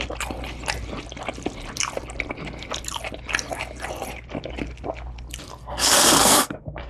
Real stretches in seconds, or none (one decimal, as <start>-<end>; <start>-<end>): 0.0-5.6